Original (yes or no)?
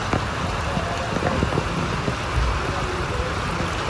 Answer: yes